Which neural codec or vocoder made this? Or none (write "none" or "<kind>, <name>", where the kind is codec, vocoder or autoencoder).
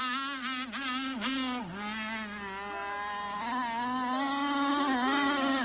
none